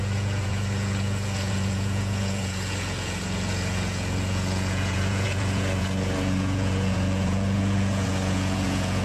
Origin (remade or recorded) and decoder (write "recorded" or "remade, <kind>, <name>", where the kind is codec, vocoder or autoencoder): remade, vocoder, Vocos